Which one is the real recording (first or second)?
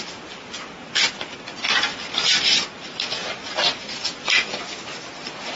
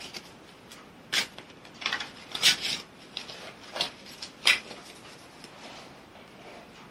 first